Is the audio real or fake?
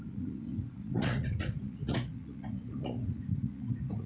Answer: fake